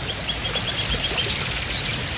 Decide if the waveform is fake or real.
real